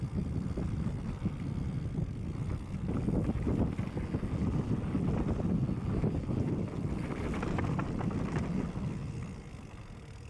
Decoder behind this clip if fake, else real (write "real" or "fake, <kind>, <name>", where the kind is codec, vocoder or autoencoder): real